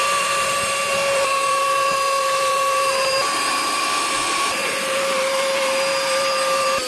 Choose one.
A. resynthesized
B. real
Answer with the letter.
A